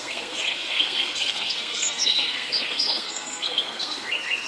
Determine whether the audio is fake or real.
fake